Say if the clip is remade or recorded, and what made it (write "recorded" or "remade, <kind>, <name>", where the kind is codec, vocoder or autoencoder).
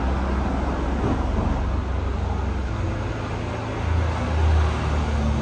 recorded